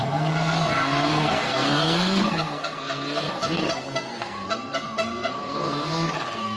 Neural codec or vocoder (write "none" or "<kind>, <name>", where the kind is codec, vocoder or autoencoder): codec, SNAC